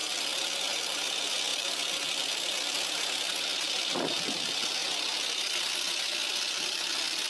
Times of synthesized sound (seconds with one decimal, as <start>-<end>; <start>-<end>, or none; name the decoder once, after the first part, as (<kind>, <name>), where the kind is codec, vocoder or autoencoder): none